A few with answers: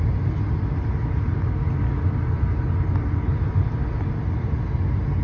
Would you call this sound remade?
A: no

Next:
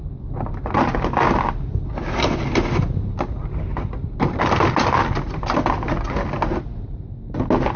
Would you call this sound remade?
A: no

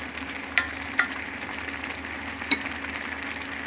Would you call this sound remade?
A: yes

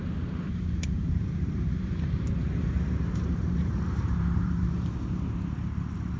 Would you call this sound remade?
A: yes